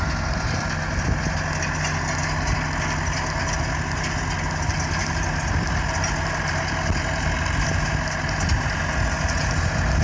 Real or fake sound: real